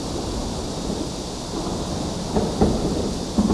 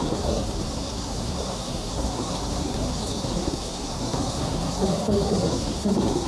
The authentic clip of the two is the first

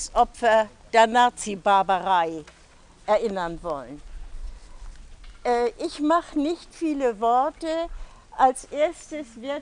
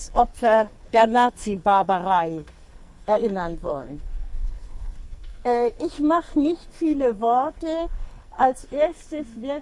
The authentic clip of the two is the first